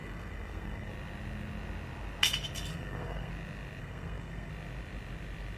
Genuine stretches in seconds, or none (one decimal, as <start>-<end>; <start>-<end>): 0.9-2.7; 3.3-3.8; 4.5-5.6